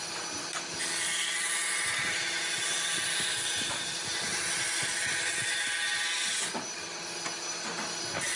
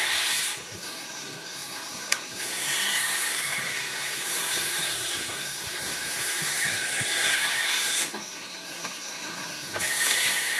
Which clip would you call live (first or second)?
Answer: first